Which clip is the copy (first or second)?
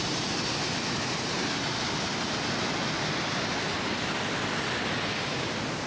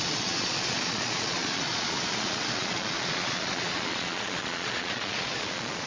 second